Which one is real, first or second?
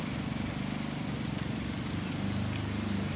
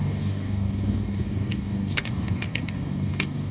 first